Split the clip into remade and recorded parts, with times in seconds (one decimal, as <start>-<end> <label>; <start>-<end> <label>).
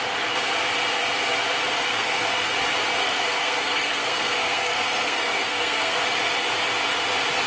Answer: 0.0-1.9 recorded; 1.9-2.5 remade; 2.5-3.0 recorded; 3.0-6.0 remade; 6.0-7.5 recorded